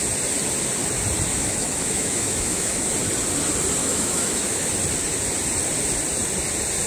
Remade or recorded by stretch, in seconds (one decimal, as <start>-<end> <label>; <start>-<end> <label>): 0.0-1.3 recorded; 1.3-2.9 remade; 2.9-3.8 recorded; 3.8-4.7 remade; 4.7-6.9 recorded